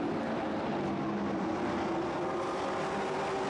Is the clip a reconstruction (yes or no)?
no